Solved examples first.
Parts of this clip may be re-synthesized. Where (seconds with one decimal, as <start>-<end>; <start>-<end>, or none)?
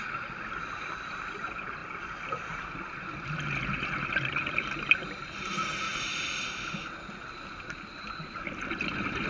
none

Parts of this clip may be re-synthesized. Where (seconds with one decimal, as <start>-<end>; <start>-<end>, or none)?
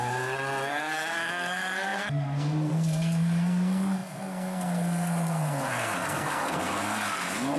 0.0-7.6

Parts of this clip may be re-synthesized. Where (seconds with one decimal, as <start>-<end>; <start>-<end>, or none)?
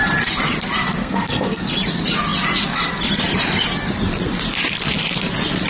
1.0-1.6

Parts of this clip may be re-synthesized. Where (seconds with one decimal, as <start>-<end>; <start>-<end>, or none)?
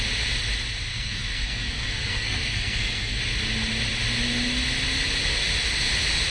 0.9-3.2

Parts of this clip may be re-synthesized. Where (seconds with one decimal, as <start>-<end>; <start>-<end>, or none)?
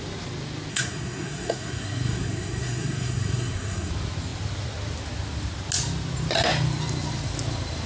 0.7-3.9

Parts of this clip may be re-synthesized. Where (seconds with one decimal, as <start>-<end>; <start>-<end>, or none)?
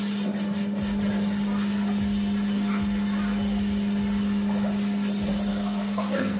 5.5-6.4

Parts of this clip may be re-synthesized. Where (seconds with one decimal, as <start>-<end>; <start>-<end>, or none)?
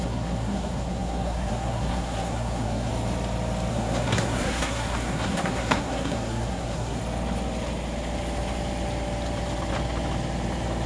0.0-2.9; 3.7-7.0